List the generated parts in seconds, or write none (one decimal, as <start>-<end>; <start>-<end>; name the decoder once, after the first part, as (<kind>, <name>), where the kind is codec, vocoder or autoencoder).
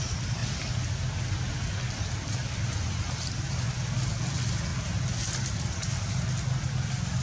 0.0-0.4 (vocoder, BigVGAN v2); 3.3-4.7; 6.7-7.2